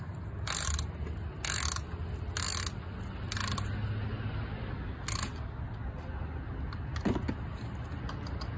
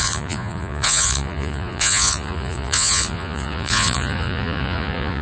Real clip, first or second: first